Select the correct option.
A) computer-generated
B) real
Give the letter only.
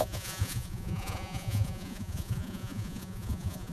A